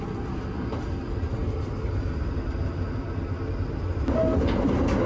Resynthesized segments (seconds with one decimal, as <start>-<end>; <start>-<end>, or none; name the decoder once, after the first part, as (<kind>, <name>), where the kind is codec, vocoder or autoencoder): none